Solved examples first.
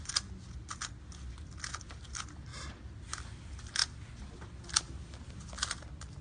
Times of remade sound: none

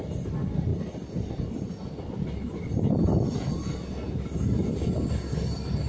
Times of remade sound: none

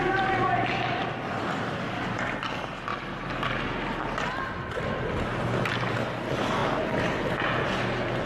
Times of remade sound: none

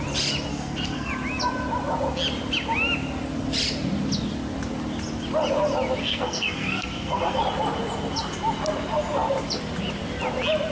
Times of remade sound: 0.5-1.1; 6.0-7.4

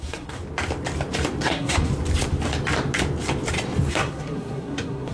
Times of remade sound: 0.0-0.4; 1.4-1.9; 3.9-5.1

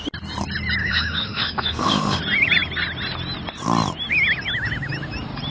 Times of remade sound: 0.8-2.2

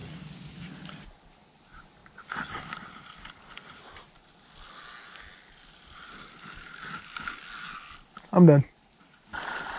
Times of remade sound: none